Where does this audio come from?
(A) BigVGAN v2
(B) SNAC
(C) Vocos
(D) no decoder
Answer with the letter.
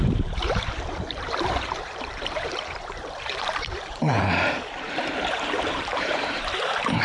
A